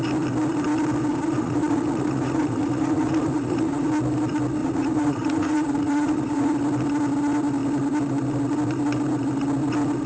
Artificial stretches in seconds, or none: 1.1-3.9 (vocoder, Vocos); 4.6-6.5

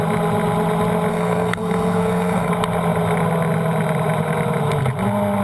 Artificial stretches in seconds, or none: 1.1-2.5 (codec, SNAC)

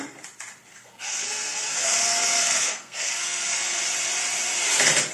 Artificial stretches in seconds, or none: 0.7-3.8 (codec, SNAC)

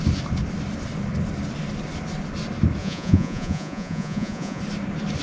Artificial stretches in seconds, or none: 2.8-4.6 (vocoder, Vocos)

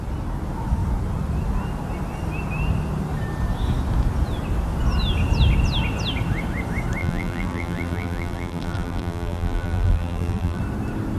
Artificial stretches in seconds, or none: 7.0-10.6 (vocoder, BigVGAN v2)

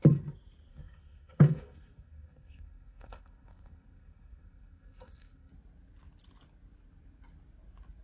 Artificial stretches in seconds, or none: 0.7-5.5 (codec, SNAC)

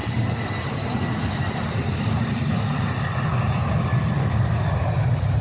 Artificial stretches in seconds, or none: 4.2-4.7 (codec, DAC)